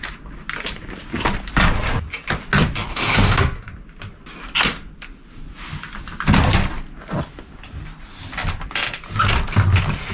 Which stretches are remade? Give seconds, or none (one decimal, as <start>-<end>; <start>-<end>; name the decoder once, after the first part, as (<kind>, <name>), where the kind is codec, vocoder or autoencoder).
2.9-3.4 (autoencoder, DAC-VAE)